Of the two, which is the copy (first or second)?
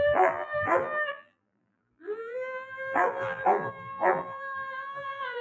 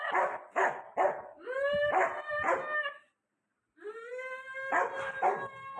first